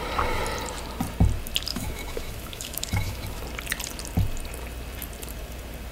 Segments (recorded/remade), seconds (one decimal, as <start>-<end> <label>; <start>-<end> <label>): 0.0-1.7 recorded; 1.7-3.4 remade; 3.4-5.9 recorded